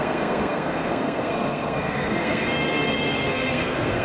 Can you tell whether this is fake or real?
fake